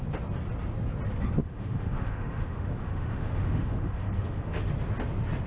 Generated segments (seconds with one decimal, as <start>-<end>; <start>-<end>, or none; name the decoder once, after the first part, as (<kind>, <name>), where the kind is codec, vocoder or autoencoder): 1.4-4.7 (autoencoder, DAC-VAE)